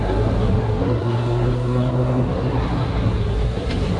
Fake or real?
fake